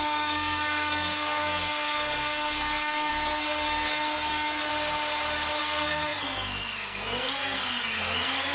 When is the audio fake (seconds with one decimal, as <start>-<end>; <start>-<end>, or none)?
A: 0.0-4.7; 5.6-8.5